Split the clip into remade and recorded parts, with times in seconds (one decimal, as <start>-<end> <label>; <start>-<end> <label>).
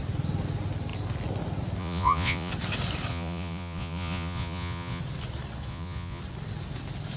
0.0-1.8 recorded; 1.8-2.5 remade; 2.5-3.1 recorded; 3.1-5.0 remade; 5.0-5.7 recorded; 5.7-6.2 remade; 6.2-7.2 recorded